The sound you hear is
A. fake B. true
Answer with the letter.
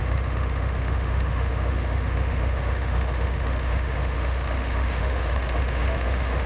A